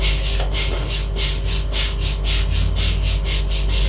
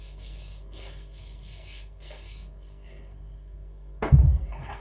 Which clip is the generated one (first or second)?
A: second